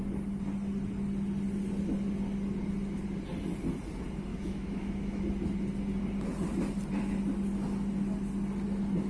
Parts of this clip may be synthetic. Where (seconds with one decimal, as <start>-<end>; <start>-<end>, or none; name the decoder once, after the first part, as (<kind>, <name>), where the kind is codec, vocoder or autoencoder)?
4.3-5.2 (autoencoder, DAC-VAE)